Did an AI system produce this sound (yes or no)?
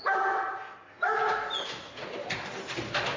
no